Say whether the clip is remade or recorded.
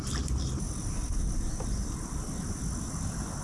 recorded